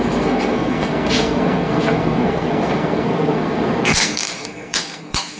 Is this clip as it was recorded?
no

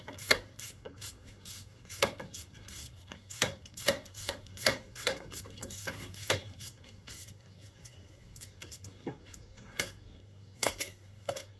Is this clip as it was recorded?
no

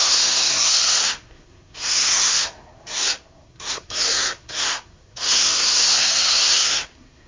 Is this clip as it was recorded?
no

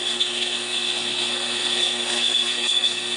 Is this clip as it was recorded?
no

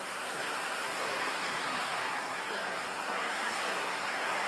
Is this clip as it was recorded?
no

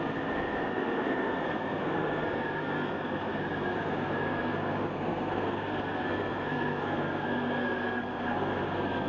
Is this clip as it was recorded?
no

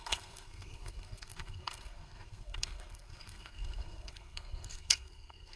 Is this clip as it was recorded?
no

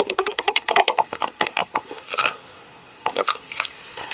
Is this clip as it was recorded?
no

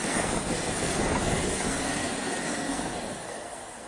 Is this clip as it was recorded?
no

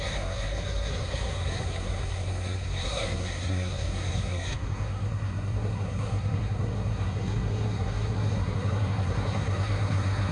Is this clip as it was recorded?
no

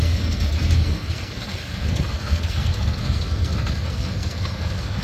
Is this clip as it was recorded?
no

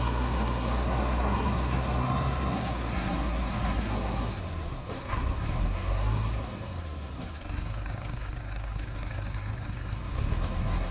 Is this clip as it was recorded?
no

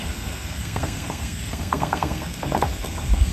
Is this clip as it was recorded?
no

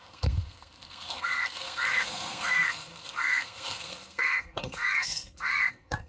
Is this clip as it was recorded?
no